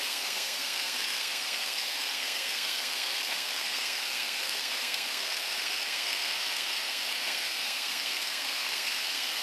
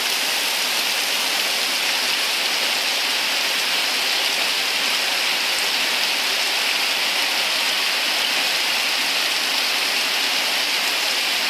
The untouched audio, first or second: second